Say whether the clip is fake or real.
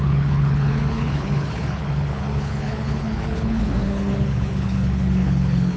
fake